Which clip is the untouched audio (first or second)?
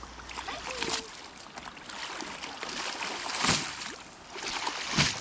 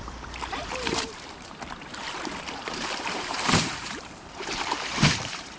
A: first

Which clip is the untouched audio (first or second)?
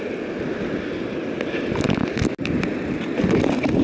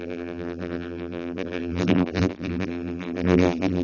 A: first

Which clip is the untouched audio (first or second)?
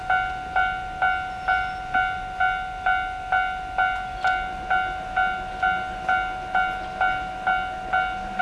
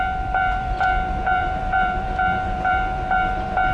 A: first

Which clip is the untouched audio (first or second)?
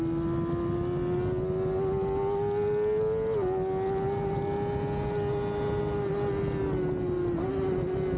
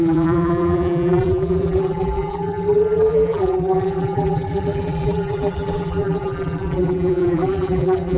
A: first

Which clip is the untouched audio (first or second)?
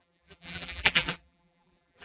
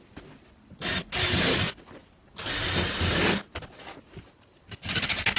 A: second